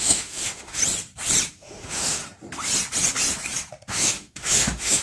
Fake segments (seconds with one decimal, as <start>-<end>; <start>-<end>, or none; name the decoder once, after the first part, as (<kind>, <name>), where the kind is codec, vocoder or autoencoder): 0.0-0.8 (autoencoder, DAC-VAE); 1.5-2.2; 3.9-5.0

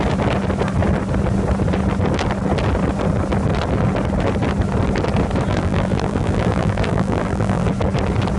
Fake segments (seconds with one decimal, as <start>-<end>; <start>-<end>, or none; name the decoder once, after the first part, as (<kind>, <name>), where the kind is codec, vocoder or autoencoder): 5.5-7.7 (vocoder, BigVGAN v2)